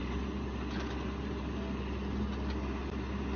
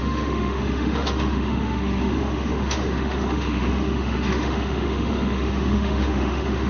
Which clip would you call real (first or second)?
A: first